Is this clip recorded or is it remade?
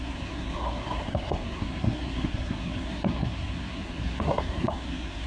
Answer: remade